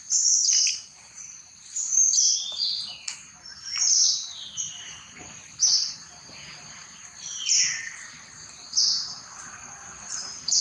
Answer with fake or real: fake